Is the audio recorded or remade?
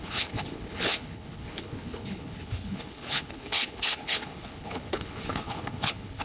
remade